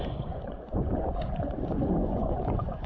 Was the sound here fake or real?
fake